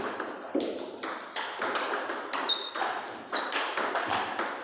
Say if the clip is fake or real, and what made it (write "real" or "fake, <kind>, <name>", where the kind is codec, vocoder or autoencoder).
real